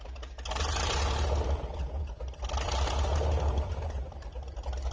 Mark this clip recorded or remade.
recorded